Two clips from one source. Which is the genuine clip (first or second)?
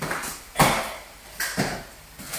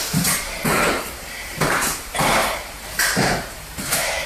first